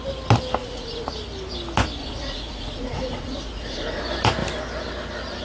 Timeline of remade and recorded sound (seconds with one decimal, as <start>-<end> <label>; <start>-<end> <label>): 0.0-0.6 recorded; 0.6-1.1 remade; 1.1-2.0 recorded; 2.0-4.0 remade; 4.0-5.4 recorded